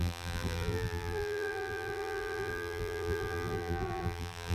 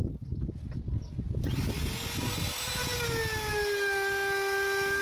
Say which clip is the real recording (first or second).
second